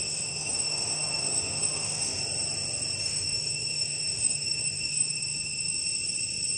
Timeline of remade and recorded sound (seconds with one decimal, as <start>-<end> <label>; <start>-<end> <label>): 0.0-2.2 remade; 2.2-3.0 recorded; 3.0-5.8 remade; 5.8-6.6 recorded